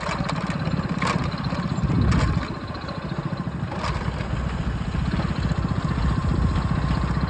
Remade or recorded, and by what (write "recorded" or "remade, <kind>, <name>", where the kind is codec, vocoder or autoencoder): recorded